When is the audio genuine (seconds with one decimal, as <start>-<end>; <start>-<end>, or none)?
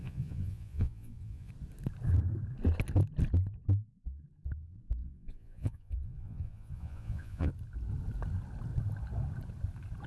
1.5-5.0; 7.5-10.1